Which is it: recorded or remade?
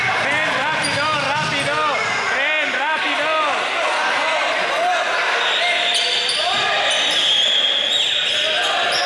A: recorded